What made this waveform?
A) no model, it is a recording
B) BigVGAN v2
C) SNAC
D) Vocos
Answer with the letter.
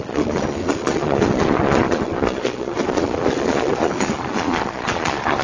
D